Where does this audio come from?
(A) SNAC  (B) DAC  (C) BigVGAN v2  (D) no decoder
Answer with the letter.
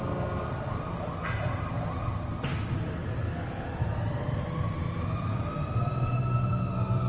D